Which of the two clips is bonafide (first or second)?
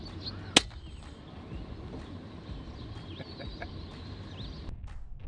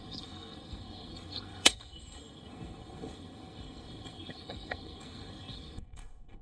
first